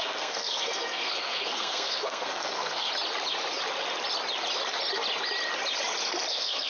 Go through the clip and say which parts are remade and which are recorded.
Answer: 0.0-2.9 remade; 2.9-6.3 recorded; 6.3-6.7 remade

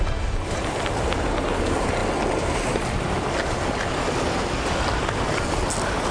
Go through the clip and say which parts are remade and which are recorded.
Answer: 0.0-6.1 recorded

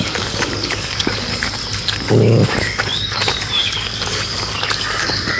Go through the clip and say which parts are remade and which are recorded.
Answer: 0.0-1.6 remade; 1.6-2.1 recorded; 2.1-5.4 remade

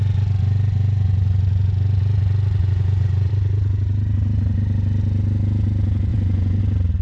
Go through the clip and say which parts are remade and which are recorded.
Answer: 0.0-2.6 recorded; 2.6-3.3 remade; 3.3-6.1 recorded; 6.1-6.6 remade; 6.6-7.0 recorded

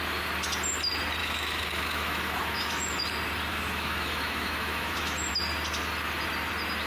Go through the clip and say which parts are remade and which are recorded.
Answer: 0.0-1.2 recorded; 1.2-3.0 remade; 3.0-3.5 recorded; 3.5-5.3 remade; 5.3-6.9 recorded

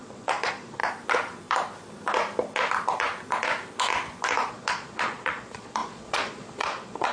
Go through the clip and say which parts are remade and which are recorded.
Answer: 0.0-0.8 remade; 0.8-4.5 recorded; 4.5-7.1 remade

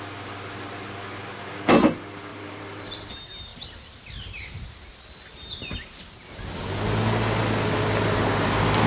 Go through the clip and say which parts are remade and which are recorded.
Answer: 0.0-2.3 recorded; 2.3-3.1 remade; 3.1-8.9 recorded

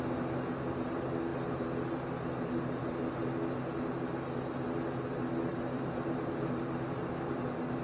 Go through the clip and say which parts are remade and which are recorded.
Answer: 0.0-5.5 recorded; 5.5-7.3 remade; 7.3-7.8 recorded